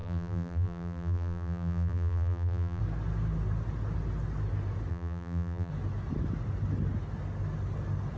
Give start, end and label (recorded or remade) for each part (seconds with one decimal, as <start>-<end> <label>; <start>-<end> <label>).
0.0-2.8 remade; 2.8-4.9 recorded; 4.9-5.7 remade; 5.7-8.2 recorded